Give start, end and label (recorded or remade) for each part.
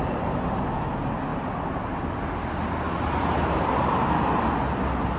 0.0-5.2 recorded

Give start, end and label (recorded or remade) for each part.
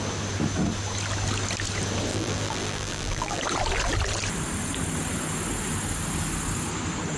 0.0-2.1 recorded; 2.1-3.4 remade; 3.4-7.2 recorded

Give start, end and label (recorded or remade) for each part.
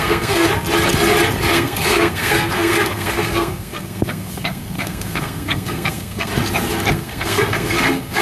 0.0-0.5 remade; 0.5-1.5 recorded; 1.5-6.3 remade; 6.3-6.9 recorded; 6.9-8.2 remade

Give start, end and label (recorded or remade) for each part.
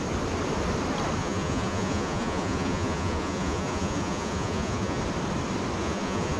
0.0-1.2 recorded; 1.2-5.0 remade; 5.0-5.8 recorded; 5.8-6.4 remade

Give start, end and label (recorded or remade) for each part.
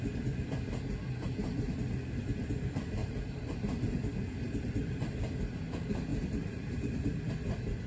0.0-3.0 recorded; 3.0-3.6 remade; 3.6-6.1 recorded; 6.1-7.3 remade; 7.3-7.9 recorded